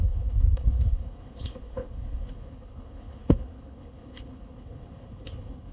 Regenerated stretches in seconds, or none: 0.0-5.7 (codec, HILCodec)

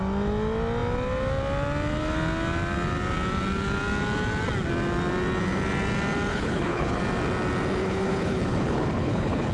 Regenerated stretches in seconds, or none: 6.3-7.0 (codec, HILCodec); 7.8-9.5

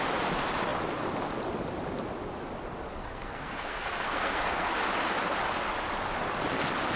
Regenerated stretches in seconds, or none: 2.9-4.7 (codec, SNAC)

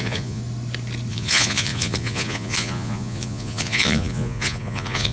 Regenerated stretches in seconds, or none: 0.0-0.4 (vocoder, Vocos); 1.1-5.1

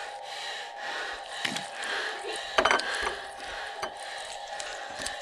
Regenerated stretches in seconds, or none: none